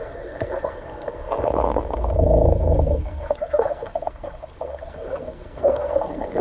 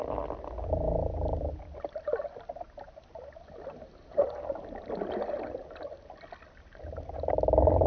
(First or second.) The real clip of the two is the second